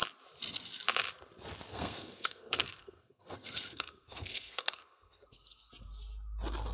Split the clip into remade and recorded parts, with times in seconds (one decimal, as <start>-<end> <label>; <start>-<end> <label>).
0.0-1.7 recorded; 1.7-5.7 remade; 5.7-6.7 recorded